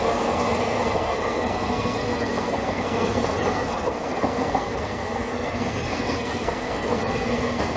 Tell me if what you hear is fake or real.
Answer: fake